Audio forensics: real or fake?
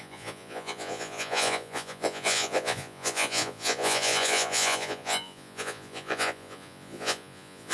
fake